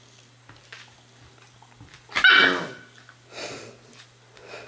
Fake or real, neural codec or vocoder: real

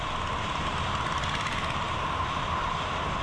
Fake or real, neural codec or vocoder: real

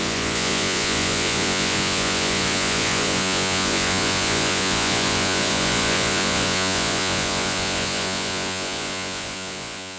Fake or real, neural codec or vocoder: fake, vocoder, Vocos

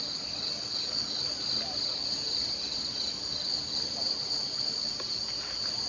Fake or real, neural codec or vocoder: real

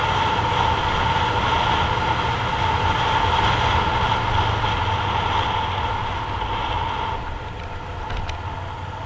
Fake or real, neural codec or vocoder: real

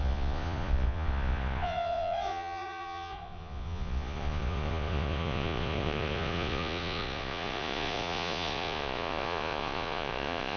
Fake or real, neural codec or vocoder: fake, vocoder, Vocos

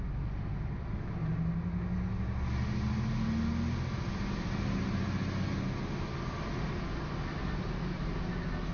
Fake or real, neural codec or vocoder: real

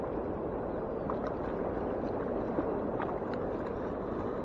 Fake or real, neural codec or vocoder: real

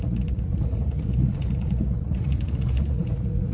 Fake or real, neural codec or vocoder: fake, vocoder, Vocos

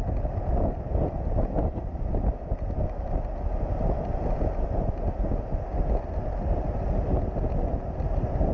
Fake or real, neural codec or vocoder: real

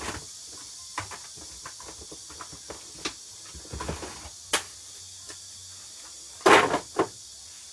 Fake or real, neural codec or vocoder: real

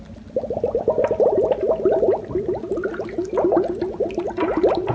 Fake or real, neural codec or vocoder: real